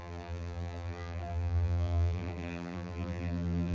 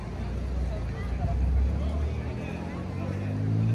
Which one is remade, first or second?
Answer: first